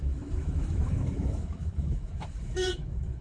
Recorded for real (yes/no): no